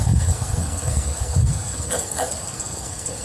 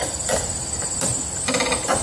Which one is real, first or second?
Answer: second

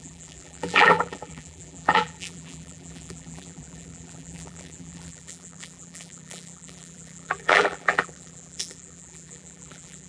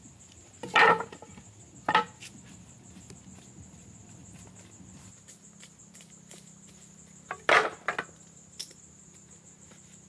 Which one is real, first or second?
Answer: second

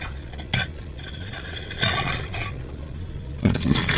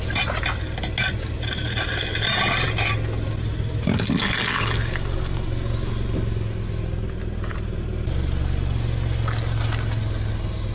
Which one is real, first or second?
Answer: second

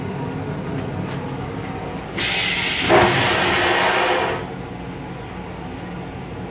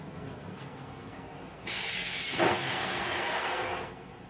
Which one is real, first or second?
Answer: first